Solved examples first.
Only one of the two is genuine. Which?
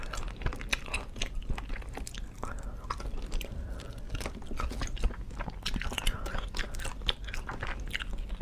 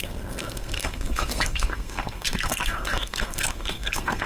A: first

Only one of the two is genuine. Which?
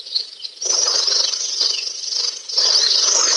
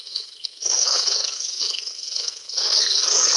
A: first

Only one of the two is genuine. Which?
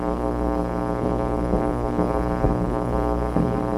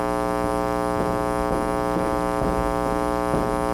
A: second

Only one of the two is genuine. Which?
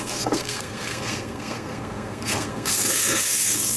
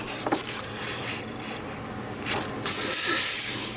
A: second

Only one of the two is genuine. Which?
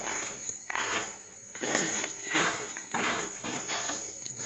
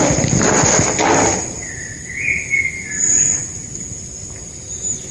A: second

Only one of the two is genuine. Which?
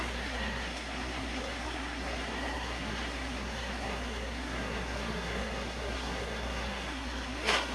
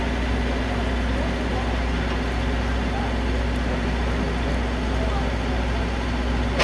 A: second